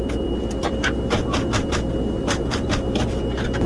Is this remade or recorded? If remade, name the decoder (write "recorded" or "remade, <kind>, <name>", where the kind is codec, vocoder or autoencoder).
recorded